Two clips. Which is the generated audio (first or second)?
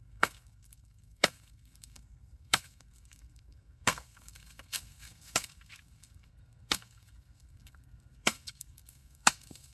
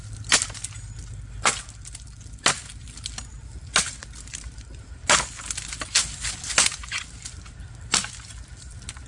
first